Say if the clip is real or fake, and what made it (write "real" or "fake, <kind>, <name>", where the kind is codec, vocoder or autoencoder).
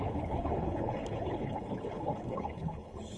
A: fake, codec, HILCodec